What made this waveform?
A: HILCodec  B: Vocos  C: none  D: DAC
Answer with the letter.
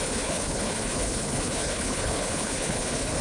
A